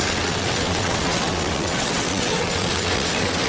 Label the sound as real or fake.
fake